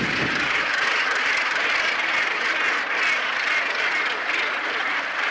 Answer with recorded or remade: recorded